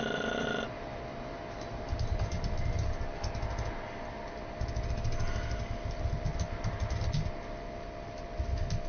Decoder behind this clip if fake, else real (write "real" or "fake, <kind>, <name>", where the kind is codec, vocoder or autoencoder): real